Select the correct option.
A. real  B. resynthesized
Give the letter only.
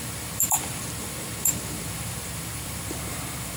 B